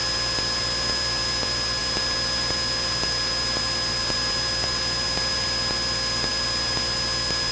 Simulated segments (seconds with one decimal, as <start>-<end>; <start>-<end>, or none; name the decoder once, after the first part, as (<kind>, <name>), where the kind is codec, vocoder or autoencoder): none